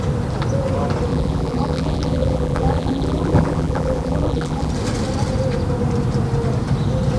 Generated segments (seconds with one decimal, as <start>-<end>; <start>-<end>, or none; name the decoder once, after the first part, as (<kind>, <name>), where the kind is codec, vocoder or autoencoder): 1.1-4.7 (vocoder, BigVGAN v2)